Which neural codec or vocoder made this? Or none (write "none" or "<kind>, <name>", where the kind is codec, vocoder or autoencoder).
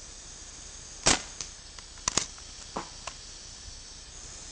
none